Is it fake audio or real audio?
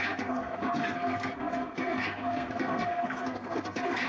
fake